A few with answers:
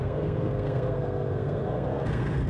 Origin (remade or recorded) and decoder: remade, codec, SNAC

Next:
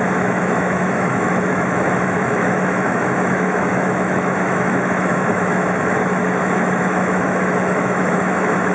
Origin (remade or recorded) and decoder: remade, autoencoder, DAC-VAE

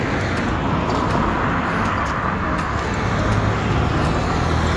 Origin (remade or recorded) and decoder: recorded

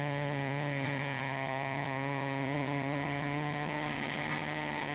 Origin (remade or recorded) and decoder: remade, vocoder, HiFi-GAN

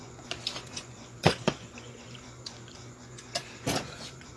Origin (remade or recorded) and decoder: remade, vocoder, Vocos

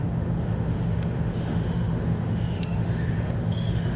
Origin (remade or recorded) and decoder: remade, autoencoder, DAC-VAE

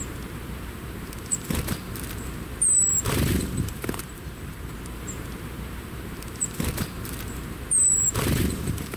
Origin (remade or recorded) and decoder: remade, vocoder, BigVGAN v2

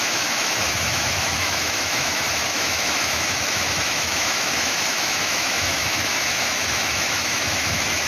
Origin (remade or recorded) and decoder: remade, autoencoder, DAC-VAE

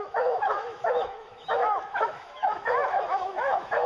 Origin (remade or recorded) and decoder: remade, autoencoder, DAC-VAE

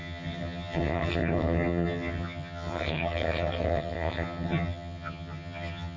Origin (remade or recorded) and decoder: remade, vocoder, HiFi-GAN